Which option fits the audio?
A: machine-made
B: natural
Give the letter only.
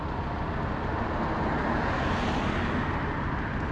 B